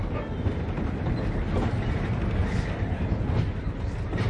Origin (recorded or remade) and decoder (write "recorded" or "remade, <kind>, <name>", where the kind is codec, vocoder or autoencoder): recorded